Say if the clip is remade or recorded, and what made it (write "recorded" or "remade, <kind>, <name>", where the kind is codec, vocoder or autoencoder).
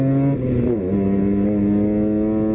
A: recorded